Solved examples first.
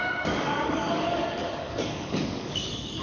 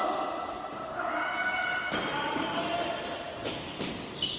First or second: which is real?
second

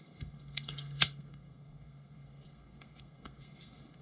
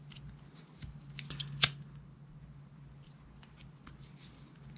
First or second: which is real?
second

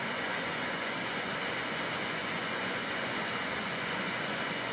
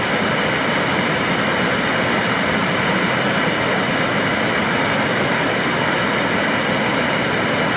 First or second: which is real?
second